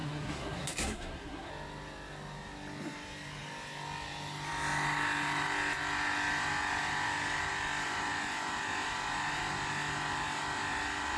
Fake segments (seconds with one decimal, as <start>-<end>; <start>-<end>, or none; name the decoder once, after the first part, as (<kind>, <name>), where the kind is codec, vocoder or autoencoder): 0.0-1.5 (codec, SNAC)